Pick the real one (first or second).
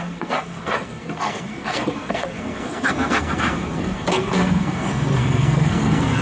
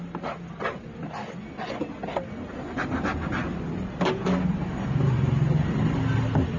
second